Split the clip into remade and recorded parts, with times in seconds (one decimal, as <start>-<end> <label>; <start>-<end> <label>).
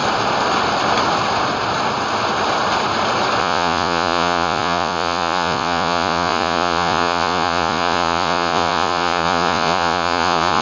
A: 0.0-3.4 recorded; 3.4-10.6 remade